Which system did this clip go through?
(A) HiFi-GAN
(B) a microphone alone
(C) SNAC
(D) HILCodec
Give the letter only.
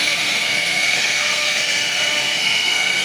C